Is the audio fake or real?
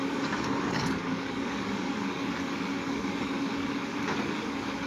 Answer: fake